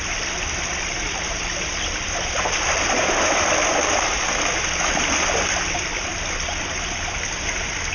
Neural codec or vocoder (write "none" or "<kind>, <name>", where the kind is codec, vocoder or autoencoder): none